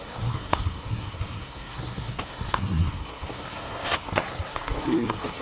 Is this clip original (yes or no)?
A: no